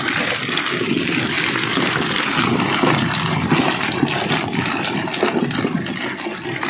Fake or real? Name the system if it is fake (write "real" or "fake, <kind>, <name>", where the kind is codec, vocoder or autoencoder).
real